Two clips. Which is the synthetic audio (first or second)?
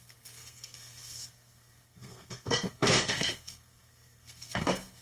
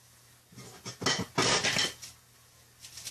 first